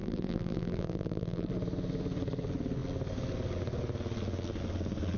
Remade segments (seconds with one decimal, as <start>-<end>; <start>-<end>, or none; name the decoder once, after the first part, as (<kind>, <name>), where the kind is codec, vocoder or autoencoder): 0.0-1.5 (vocoder, BigVGAN v2)